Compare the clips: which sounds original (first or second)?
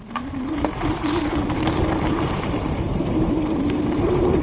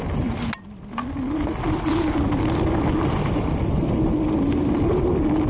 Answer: second